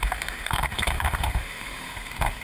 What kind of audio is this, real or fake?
fake